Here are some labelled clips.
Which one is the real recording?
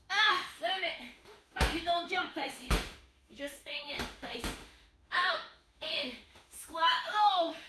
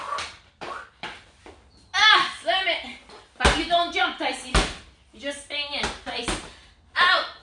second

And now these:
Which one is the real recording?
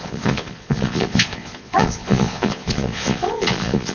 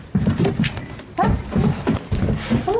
second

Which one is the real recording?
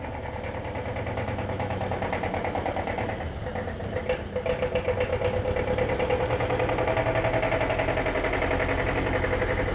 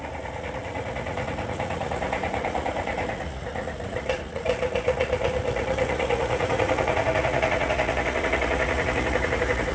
first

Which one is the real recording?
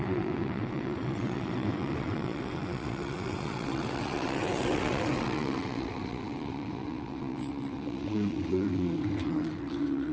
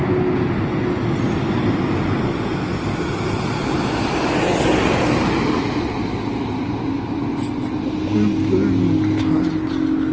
second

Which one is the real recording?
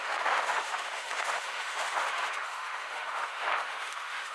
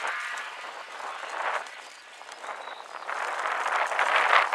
second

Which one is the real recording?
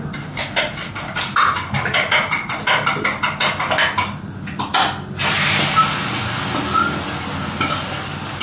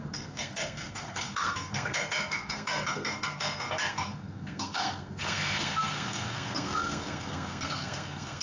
first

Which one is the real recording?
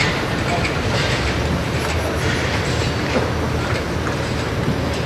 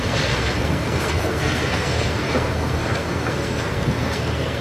first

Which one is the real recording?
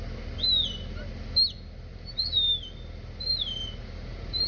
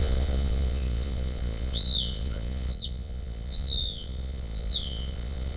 first